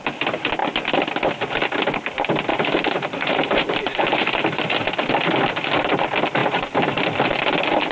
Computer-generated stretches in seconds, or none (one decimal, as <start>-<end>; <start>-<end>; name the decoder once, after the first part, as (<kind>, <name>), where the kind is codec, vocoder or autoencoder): 2.5-4.9 (vocoder, BigVGAN v2); 6.4-7.0